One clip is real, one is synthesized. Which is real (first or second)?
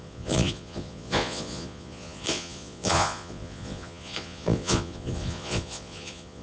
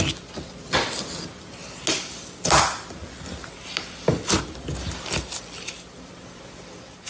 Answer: second